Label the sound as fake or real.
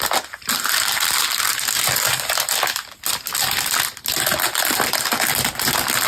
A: real